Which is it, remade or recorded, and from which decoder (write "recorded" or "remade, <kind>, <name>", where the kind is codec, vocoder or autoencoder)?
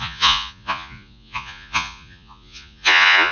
remade, vocoder, Vocos